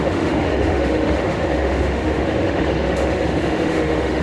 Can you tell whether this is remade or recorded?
remade